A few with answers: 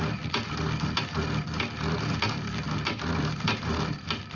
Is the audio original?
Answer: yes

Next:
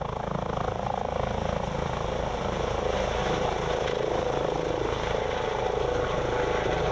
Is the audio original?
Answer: yes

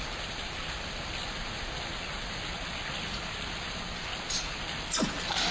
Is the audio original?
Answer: yes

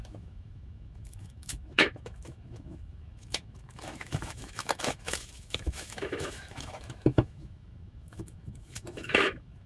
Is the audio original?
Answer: no